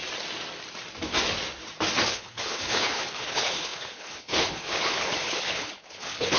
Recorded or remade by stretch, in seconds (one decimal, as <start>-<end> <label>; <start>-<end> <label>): 0.0-2.1 recorded; 2.1-6.4 remade